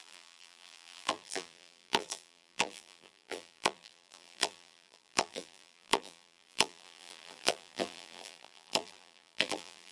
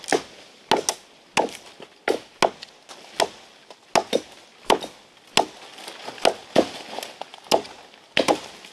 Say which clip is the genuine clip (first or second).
second